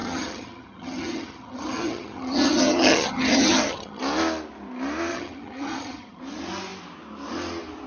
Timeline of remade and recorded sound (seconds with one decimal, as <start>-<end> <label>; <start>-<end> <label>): 0.0-4.0 remade; 4.0-5.1 recorded; 5.1-6.2 remade; 6.2-7.9 recorded